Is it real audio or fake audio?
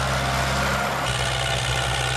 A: real